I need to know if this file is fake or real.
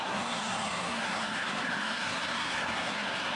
fake